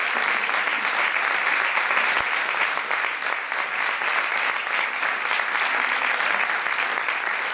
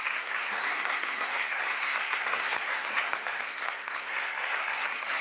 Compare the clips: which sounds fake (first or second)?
second